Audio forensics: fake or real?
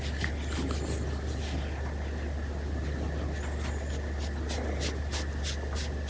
real